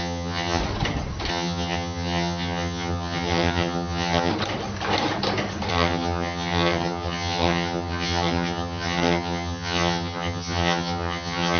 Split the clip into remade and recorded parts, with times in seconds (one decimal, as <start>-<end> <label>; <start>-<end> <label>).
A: 0.0-0.6 remade; 0.6-1.3 recorded; 1.3-4.3 remade; 4.3-5.7 recorded; 5.7-11.6 remade